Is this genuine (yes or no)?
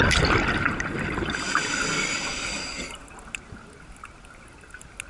yes